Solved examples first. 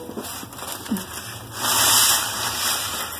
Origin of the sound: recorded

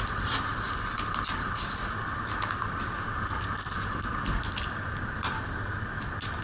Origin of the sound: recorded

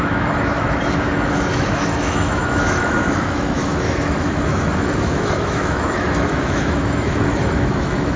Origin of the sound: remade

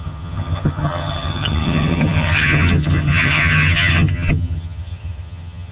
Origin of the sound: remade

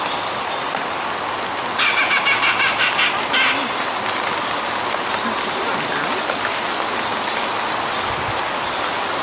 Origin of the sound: recorded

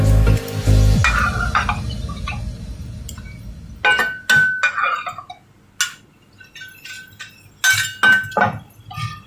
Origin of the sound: recorded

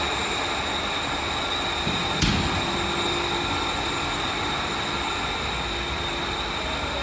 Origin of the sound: recorded